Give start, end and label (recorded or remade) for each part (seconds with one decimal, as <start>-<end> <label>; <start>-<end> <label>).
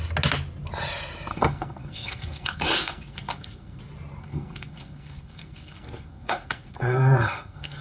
0.0-1.3 recorded; 1.3-3.8 remade; 3.8-4.2 recorded; 4.2-7.8 remade